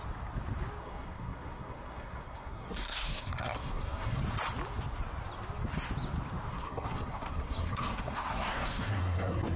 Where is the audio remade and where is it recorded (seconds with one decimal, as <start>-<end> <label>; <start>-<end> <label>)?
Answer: 0.0-0.8 recorded; 0.8-4.2 remade; 4.2-6.5 recorded; 6.5-9.6 remade